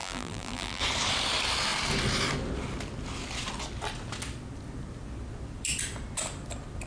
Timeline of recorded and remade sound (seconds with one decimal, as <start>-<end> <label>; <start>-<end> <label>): 0.0-0.8 remade; 0.8-6.9 recorded